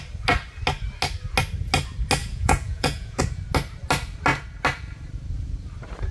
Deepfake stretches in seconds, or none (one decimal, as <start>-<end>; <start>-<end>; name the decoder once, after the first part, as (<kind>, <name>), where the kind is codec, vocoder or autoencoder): 2.2-3.2 (vocoder, Vocos)